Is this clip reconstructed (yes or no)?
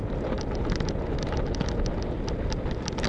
no